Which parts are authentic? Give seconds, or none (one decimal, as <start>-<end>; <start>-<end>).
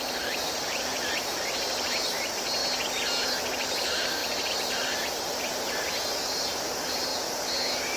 2.6-3.4; 7.1-8.0